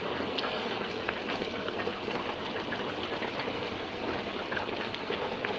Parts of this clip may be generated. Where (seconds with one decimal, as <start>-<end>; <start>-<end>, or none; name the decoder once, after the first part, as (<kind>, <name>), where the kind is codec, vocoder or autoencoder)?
0.0-2.2 (codec, SNAC); 3.5-4.1; 4.8-5.6